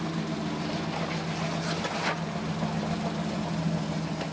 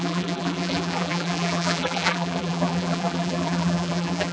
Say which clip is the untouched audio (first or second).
first